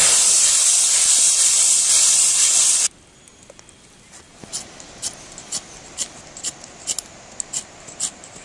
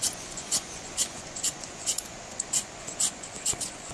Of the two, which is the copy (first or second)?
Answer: second